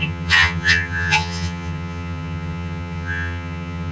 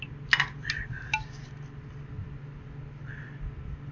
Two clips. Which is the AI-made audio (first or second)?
first